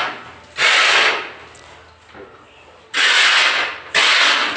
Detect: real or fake real